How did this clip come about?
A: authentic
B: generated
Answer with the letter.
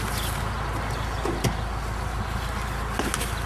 A